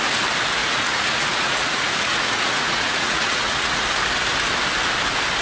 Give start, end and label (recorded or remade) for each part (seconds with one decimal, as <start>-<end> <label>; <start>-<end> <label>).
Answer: 0.0-0.6 recorded; 0.6-3.8 remade; 3.8-5.4 recorded